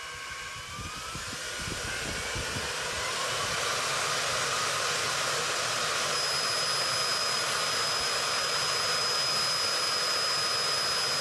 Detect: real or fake real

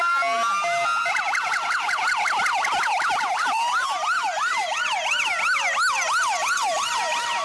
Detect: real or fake real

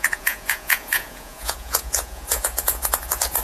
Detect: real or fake fake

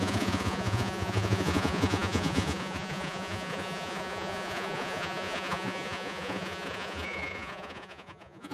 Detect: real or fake fake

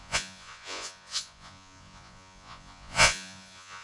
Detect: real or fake fake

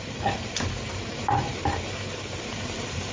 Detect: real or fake fake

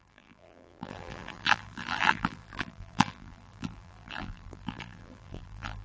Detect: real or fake fake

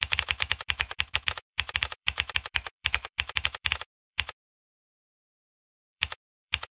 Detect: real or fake fake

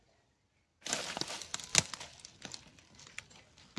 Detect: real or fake real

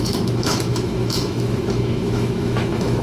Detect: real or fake fake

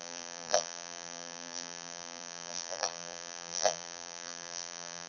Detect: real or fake fake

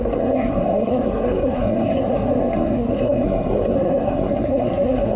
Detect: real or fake fake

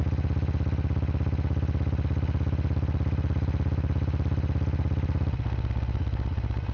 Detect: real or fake real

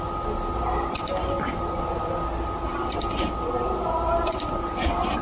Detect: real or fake real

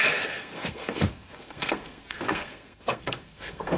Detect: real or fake fake